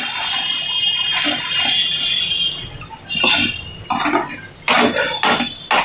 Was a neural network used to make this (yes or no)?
no